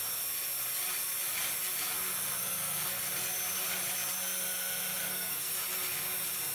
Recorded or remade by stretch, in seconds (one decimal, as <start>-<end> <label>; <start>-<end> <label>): 0.0-2.4 recorded; 2.4-3.1 remade; 3.1-5.0 recorded; 5.0-5.5 remade; 5.5-6.5 recorded